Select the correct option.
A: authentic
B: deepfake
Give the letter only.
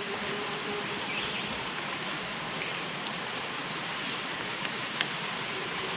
A